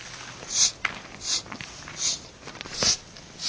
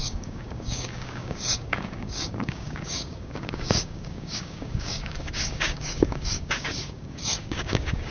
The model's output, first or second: second